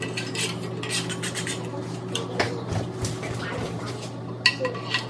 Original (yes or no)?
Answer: yes